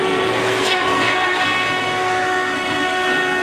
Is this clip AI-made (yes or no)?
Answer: yes